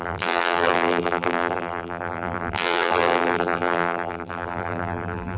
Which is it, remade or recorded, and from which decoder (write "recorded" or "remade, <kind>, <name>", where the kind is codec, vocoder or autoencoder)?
remade, vocoder, BigVGAN v2